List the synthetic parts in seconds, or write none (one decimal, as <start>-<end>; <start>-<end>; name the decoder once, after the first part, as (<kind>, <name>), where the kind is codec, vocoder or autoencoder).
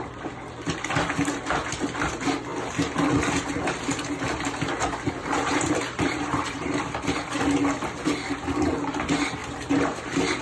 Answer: 5.2-7.3 (vocoder, BigVGAN v2); 9.4-10.4